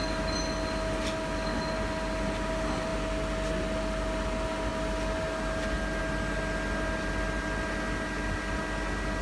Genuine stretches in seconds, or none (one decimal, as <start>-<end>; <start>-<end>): 0.0-9.2

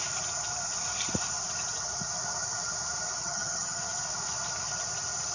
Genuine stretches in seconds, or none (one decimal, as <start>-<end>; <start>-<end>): 0.0-3.2; 3.8-5.3

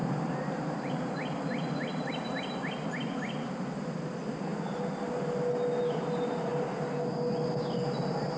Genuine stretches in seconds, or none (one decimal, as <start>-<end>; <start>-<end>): 0.0-8.4

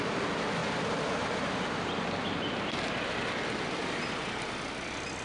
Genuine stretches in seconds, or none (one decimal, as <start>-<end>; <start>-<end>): 0.0-5.2

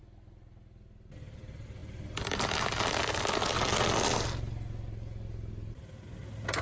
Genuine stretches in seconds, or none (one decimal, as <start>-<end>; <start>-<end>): 0.0-6.6

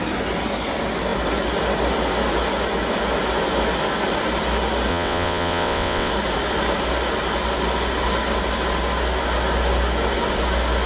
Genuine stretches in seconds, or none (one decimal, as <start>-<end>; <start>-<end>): 0.0-4.9; 6.1-10.9

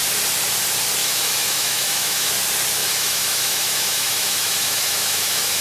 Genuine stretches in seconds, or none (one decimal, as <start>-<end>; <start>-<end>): 0.0-1.0; 2.3-2.8

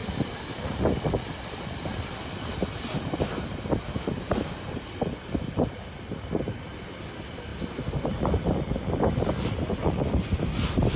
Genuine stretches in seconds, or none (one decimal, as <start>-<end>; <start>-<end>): 0.0-11.0